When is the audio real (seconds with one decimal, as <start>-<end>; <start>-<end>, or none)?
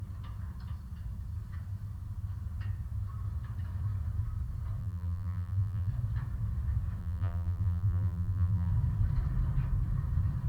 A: 0.0-4.8; 5.9-7.0; 8.7-10.5